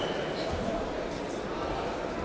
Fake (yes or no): no